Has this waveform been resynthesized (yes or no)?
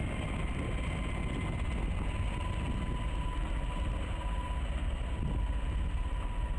no